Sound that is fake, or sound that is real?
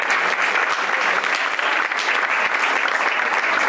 real